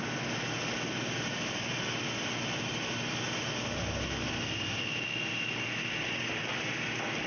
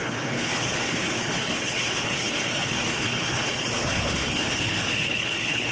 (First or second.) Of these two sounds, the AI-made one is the second